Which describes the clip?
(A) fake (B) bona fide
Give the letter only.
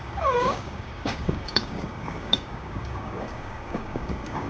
A